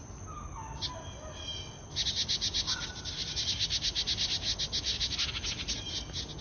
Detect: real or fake real